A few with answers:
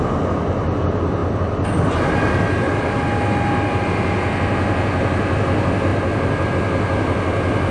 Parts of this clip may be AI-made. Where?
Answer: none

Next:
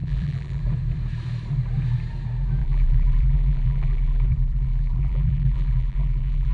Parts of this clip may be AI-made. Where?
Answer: 0.0-0.6 (vocoder, BigVGAN v2); 2.6-6.5

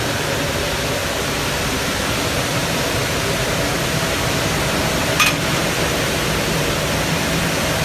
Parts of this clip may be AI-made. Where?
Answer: 0.0-1.0 (vocoder, BigVGAN v2); 1.8-3.0; 5.6-7.8

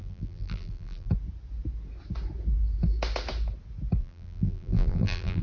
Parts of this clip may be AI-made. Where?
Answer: 0.0-1.1 (vocoder, BigVGAN v2); 4.0-5.4

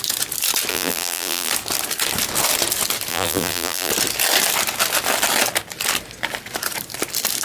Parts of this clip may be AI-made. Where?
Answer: 0.7-1.5 (vocoder, BigVGAN v2); 3.1-3.9

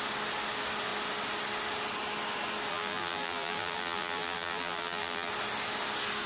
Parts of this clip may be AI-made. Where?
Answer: 2.7-5.3 (vocoder, BigVGAN v2)